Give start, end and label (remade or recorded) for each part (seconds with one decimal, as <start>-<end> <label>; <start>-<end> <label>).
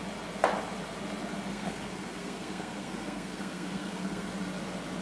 0.0-1.5 recorded; 1.5-4.3 remade; 4.3-5.0 recorded